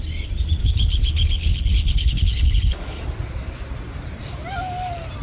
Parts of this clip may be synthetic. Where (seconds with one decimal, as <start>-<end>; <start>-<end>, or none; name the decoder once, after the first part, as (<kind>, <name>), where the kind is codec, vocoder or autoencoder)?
0.6-3.0 (codec, HILCodec)